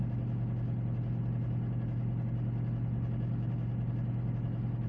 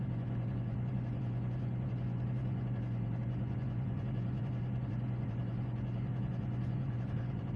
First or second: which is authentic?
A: first